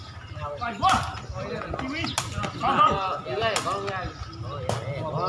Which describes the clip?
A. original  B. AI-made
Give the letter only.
A